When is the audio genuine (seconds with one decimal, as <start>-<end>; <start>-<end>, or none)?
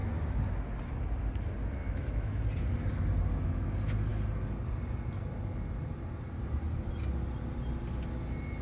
0.0-1.8; 2.4-8.6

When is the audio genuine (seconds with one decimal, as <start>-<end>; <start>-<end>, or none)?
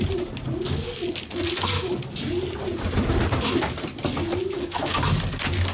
0.0-4.4; 5.0-5.7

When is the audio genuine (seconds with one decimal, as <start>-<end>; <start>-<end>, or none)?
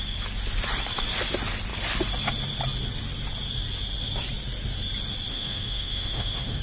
0.0-5.3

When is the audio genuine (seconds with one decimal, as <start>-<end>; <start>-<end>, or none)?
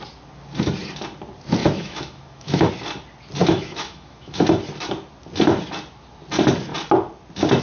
0.0-1.6; 2.7-3.4; 4.4-7.6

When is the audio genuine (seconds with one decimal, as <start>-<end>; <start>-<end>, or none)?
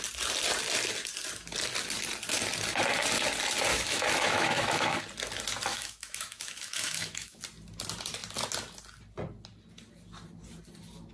0.0-3.7; 5.0-5.7; 7.4-11.1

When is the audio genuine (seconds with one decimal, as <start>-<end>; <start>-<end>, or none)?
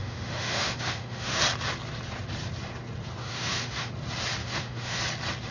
1.4-3.2; 3.9-4.4; 5.0-5.5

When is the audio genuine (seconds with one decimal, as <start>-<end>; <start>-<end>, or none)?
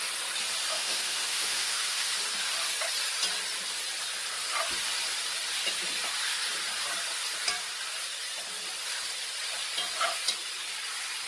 0.0-0.7; 2.1-11.3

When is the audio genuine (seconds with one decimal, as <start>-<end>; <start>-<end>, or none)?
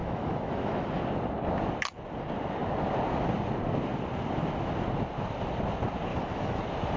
1.0-6.1; 6.6-7.0